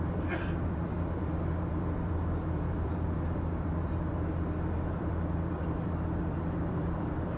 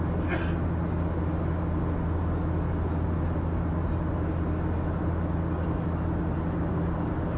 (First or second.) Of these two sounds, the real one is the second